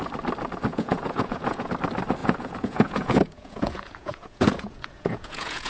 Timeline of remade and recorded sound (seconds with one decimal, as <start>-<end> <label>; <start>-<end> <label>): 0.0-0.7 recorded; 0.7-1.7 remade; 1.7-2.2 recorded; 2.2-5.7 remade